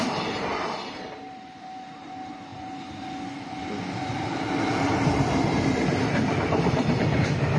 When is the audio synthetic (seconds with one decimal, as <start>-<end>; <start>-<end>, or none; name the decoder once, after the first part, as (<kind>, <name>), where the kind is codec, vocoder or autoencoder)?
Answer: none